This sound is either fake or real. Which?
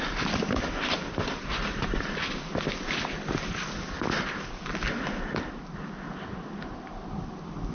real